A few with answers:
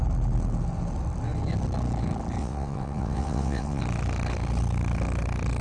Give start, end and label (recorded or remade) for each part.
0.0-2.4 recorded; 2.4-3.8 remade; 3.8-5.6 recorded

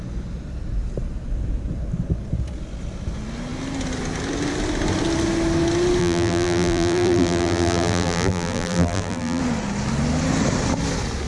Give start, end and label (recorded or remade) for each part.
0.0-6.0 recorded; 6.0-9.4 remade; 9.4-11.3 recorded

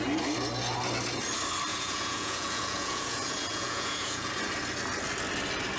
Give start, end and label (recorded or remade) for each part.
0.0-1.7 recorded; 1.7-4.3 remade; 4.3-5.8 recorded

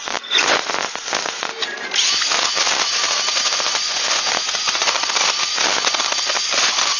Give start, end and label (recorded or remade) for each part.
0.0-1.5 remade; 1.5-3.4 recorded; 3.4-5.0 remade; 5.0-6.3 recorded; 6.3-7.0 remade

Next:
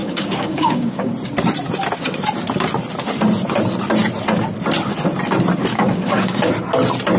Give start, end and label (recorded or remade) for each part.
0.0-1.1 remade; 1.1-5.7 recorded; 5.7-6.5 remade; 6.5-7.2 recorded